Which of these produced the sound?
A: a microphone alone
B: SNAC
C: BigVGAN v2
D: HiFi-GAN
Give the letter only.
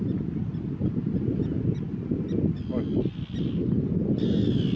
A